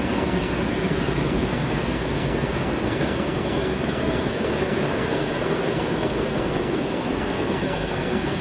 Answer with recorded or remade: remade